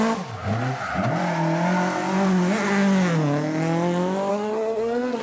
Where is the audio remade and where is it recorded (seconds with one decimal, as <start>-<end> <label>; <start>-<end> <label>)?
0.0-4.3 recorded; 4.3-5.2 remade